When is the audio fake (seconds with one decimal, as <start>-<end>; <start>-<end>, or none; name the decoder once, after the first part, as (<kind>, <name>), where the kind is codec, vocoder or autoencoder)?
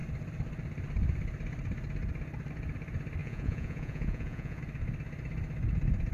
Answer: 3.2-4.6 (vocoder, Vocos)